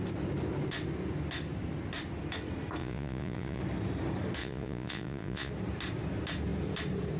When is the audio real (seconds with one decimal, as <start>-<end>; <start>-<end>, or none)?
0.0-2.8; 3.6-4.4; 5.5-7.2